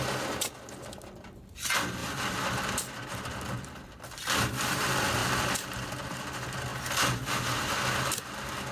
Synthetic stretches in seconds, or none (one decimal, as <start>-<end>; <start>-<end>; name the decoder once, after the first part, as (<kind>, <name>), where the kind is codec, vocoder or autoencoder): 2.0-3.7 (vocoder, BigVGAN v2); 5.2-6.3